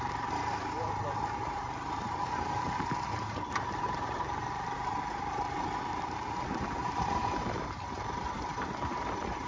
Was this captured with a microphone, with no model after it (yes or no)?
no